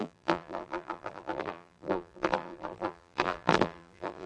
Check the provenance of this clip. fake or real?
fake